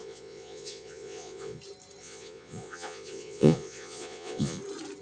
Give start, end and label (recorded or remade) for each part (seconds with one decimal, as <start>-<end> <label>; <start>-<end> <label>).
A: 0.0-1.6 remade; 1.6-2.0 recorded; 2.0-4.6 remade; 4.6-5.0 recorded